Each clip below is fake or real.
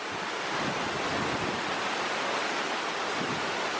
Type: real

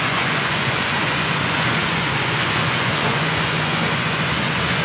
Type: fake